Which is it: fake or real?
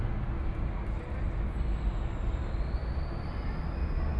real